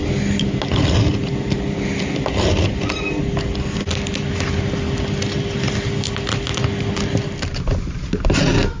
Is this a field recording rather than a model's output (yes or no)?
yes